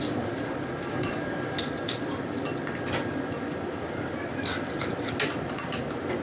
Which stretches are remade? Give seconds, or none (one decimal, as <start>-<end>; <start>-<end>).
0.9-1.6